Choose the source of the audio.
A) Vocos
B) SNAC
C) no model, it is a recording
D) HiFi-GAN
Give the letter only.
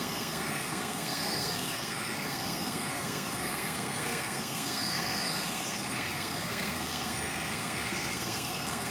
B